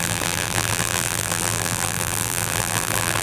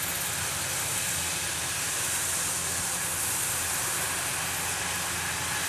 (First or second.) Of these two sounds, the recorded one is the second